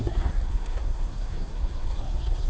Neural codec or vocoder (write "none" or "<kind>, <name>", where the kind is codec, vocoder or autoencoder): codec, SNAC